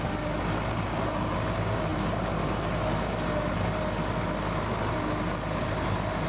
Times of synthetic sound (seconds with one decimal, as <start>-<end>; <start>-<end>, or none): none